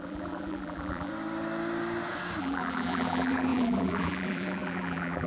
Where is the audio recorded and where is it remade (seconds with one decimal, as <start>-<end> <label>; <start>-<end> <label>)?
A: 0.0-1.1 remade; 1.1-2.4 recorded; 2.4-5.3 remade